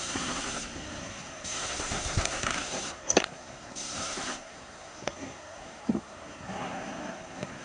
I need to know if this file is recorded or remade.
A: remade